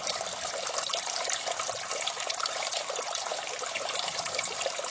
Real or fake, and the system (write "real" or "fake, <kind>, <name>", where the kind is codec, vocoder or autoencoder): fake, vocoder, BigVGAN v2